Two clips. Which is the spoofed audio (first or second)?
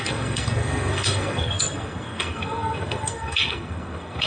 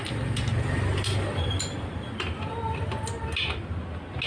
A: first